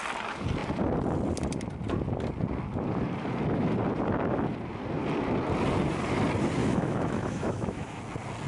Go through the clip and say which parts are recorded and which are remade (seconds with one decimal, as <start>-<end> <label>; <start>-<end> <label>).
0.0-6.6 recorded; 6.6-8.0 remade; 8.0-8.5 recorded